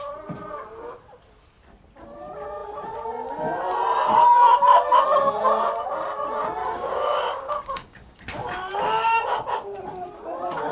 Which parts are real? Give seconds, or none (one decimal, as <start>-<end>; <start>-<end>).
0.0-6.6; 8.2-10.7